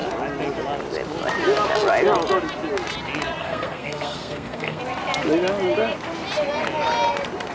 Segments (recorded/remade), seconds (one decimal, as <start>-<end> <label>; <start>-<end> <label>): 0.0-3.4 recorded; 3.4-4.8 remade; 4.8-7.5 recorded